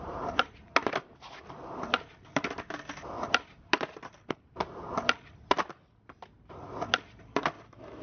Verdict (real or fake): real